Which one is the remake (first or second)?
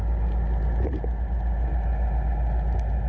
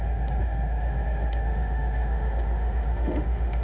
second